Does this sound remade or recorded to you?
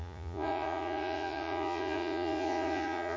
remade